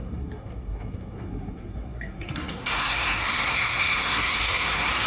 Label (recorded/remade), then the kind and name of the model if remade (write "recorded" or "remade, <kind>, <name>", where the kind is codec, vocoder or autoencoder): remade, codec, SNAC